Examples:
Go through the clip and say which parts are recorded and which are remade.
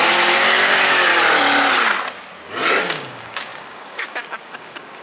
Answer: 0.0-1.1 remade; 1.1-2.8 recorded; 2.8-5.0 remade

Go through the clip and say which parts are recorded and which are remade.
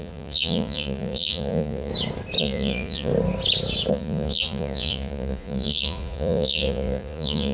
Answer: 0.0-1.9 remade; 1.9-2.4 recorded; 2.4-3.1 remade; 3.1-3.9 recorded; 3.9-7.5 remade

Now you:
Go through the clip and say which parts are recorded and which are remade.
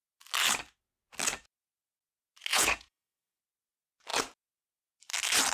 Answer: 0.0-2.5 recorded; 2.5-3.4 remade; 3.4-5.5 recorded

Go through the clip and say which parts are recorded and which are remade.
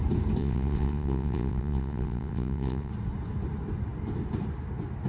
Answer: 0.0-0.4 recorded; 0.4-2.9 remade; 2.9-5.1 recorded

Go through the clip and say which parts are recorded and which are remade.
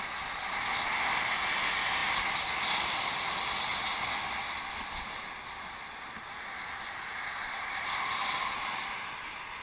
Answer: 0.0-9.6 recorded